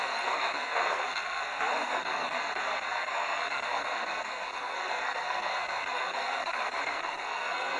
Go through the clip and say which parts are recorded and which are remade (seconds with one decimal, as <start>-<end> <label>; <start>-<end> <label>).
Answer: 0.0-7.8 remade